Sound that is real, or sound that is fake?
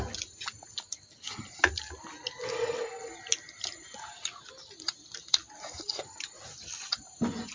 real